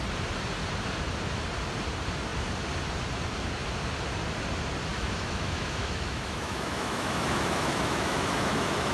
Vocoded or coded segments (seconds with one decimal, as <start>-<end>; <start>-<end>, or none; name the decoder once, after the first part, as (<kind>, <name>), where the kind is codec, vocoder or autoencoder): 4.9-8.9 (autoencoder, DAC-VAE)